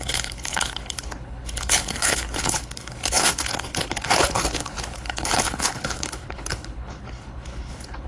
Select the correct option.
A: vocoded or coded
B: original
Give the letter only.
A